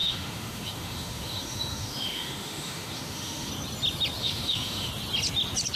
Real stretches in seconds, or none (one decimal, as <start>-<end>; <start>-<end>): 3.5-4.2; 4.9-5.8